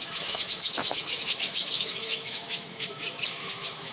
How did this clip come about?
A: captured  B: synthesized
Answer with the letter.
B